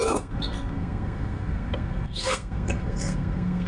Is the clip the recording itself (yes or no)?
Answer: no